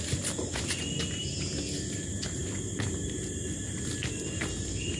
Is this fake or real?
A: real